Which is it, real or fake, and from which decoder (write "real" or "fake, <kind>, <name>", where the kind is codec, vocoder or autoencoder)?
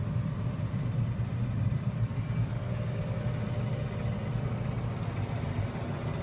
real